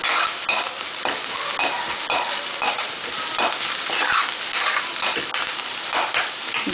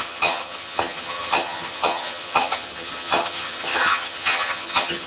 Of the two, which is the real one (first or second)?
first